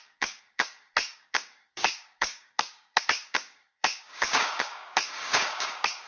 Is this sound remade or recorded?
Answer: remade